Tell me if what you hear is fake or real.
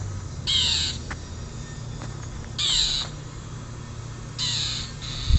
real